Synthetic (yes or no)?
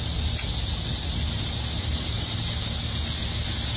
no